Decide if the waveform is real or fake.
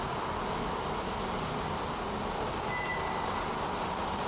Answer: real